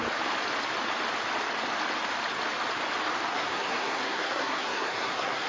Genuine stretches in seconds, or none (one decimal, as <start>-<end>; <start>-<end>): 0.0-3.3